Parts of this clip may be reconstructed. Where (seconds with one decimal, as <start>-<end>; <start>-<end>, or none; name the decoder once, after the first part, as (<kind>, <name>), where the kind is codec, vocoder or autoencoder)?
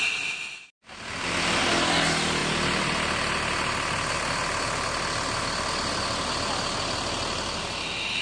none